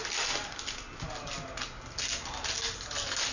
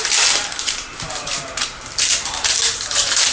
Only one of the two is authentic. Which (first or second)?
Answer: first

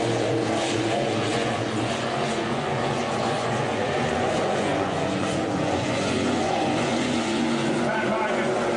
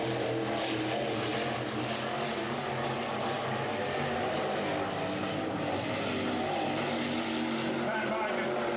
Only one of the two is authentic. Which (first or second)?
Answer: second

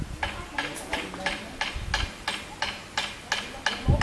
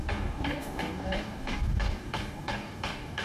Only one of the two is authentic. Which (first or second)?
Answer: first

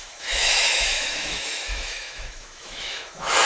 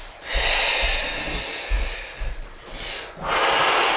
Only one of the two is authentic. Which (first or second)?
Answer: second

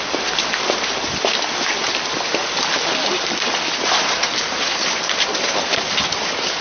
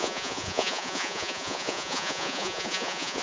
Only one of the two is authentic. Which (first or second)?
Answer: first